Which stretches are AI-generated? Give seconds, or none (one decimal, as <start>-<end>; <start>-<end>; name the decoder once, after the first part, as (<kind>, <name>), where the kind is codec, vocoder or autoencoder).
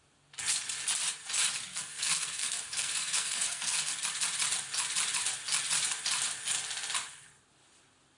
1.7-4.0 (codec, SNAC)